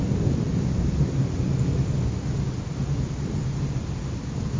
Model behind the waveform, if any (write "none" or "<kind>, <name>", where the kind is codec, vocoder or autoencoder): none